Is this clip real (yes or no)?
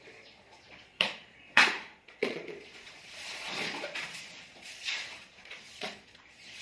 no